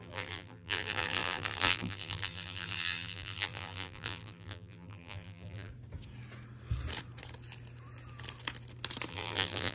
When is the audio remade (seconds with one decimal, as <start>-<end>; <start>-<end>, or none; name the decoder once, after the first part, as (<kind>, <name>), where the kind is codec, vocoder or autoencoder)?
0.0-5.7 (vocoder, BigVGAN v2); 9.1-9.7

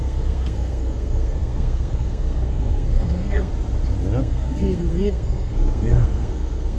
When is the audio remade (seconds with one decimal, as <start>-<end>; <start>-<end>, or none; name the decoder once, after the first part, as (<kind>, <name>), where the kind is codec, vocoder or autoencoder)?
0.0-3.5 (codec, SNAC); 4.2-6.8

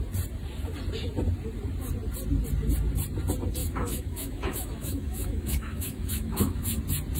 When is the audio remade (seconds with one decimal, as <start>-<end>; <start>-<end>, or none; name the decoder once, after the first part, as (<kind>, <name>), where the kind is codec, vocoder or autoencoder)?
3.6-6.8 (autoencoder, DAC-VAE)

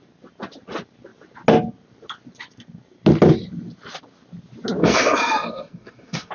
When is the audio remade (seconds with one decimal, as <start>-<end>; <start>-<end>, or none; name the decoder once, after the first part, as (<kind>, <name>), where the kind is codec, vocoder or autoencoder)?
4.8-6.3 (codec, SNAC)

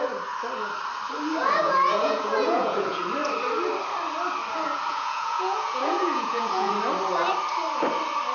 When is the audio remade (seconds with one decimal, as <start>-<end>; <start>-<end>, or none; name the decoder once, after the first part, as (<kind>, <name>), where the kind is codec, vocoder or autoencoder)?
1.4-3.0 (vocoder, Vocos); 4.9-6.7

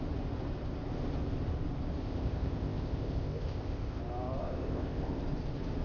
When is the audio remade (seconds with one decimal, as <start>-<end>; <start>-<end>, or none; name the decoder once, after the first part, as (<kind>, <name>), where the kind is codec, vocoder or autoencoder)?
2.0-4.0 (codec, ZipCodec); 4.4-5.2

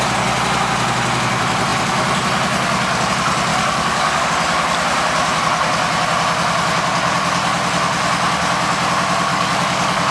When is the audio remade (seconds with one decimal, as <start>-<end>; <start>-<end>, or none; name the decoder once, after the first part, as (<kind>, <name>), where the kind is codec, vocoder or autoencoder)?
3.5-4.3 (codec, DAC); 9.3-10.1